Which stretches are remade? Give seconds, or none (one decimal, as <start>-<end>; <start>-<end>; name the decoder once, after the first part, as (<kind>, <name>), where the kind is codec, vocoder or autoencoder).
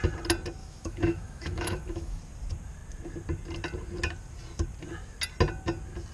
0.6-2.2 (autoencoder, DAC-VAE)